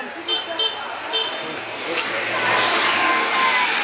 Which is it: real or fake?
real